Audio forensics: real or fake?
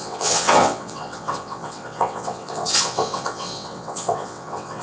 fake